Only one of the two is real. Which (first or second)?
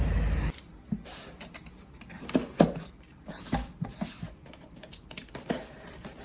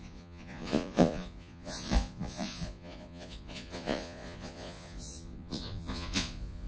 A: first